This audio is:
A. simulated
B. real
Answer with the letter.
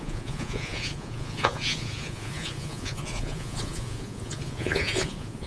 A